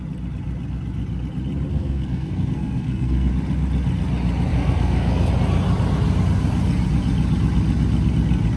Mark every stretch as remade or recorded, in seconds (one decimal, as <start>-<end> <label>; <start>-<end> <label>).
0.0-1.7 recorded; 1.7-3.3 remade; 3.3-4.5 recorded; 4.5-5.3 remade; 5.3-8.6 recorded